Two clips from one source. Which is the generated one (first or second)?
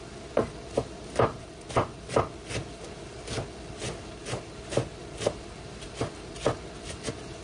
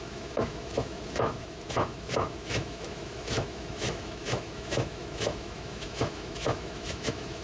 second